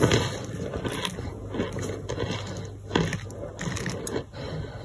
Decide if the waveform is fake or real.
real